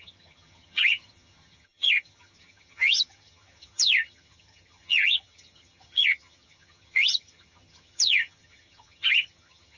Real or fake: fake